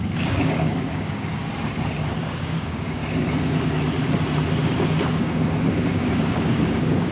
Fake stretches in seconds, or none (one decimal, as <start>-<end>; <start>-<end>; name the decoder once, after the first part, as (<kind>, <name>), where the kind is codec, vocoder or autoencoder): 0.0-1.3 (codec, DAC); 2.2-3.0; 5.1-7.1